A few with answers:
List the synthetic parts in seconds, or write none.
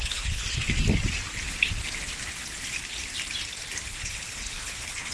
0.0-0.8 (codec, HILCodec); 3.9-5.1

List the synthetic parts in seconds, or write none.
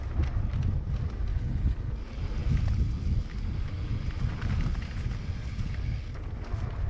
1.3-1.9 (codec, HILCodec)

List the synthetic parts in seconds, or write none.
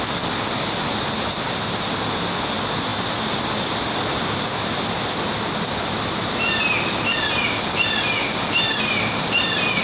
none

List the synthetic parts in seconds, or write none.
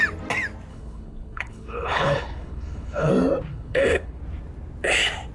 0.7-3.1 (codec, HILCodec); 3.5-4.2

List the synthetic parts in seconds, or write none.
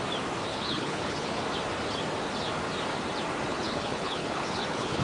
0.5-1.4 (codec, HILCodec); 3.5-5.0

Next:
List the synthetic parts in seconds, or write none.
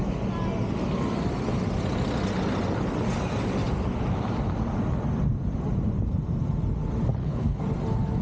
7.1-7.6 (codec, HILCodec)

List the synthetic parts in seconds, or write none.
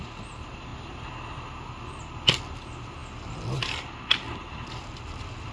none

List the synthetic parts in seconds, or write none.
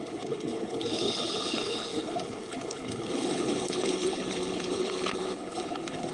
0.0-6.1 (codec, HILCodec)